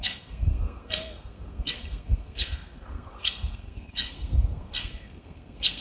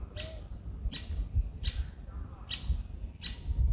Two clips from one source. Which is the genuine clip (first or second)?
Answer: second